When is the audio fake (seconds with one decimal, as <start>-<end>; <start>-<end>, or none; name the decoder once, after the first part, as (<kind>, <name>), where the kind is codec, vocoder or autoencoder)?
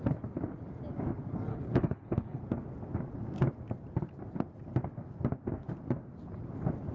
1.5-2.4 (codec, HILCodec)